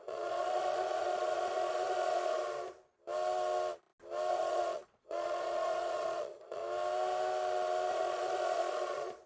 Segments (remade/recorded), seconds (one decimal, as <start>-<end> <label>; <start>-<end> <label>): 0.0-2.4 remade; 2.4-4.3 recorded; 4.3-6.6 remade; 6.6-7.9 recorded; 7.9-9.3 remade